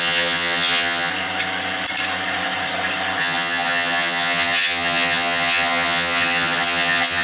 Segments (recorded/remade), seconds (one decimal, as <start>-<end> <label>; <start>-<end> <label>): 0.0-1.1 remade; 1.1-3.2 recorded; 3.2-7.2 remade